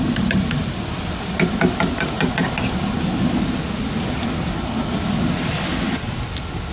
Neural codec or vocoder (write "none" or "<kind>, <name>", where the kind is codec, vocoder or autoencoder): none